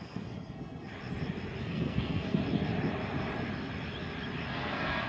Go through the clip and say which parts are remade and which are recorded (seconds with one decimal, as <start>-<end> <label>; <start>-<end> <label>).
0.0-0.9 remade; 0.9-1.6 recorded; 1.6-2.4 remade; 2.4-4.5 recorded; 4.5-5.1 remade